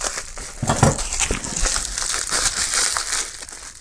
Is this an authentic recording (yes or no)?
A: yes